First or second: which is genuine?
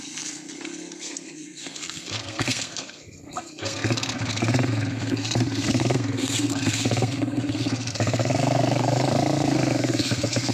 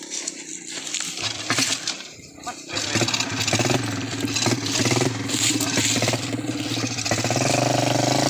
second